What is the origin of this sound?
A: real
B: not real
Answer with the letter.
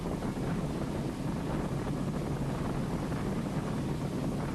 A